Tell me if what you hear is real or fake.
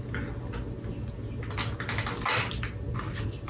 real